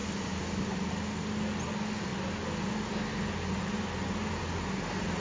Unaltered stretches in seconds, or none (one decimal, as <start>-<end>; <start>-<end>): 0.9-5.2